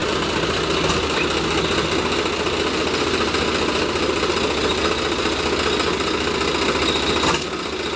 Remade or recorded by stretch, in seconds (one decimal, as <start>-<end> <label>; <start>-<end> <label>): 0.0-8.0 recorded